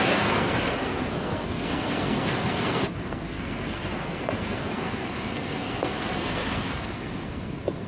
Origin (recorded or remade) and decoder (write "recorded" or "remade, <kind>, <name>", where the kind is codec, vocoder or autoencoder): remade, codec, SNAC